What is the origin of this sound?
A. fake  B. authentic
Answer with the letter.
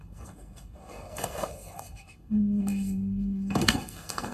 A